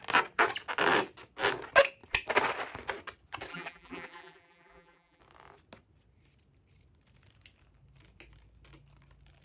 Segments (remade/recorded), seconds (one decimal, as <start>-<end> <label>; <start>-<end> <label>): 0.0-3.5 recorded; 3.5-5.2 remade; 5.2-9.4 recorded